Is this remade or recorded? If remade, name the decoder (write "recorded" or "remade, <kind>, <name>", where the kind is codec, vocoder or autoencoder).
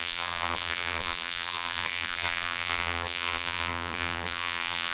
remade, vocoder, BigVGAN v2